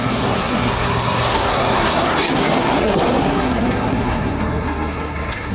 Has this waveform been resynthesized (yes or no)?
yes